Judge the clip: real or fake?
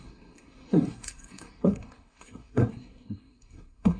fake